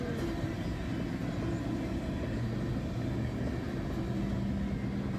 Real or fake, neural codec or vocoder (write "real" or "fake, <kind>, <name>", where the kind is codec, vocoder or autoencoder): real